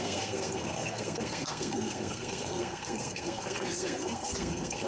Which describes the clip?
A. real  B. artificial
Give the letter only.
B